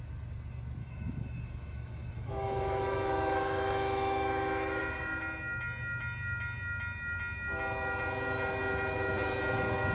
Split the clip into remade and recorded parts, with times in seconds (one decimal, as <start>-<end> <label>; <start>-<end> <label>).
0.0-0.8 recorded; 0.8-4.8 remade; 4.8-9.9 recorded